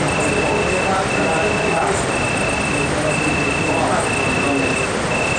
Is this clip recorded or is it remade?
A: recorded